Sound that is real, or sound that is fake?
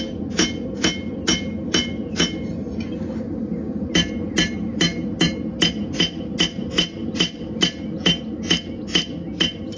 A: real